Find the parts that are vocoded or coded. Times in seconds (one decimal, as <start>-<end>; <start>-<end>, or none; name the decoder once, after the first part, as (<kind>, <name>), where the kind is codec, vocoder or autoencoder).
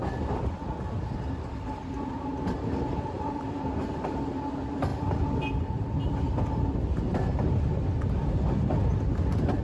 none